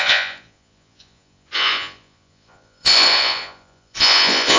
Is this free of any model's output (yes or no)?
no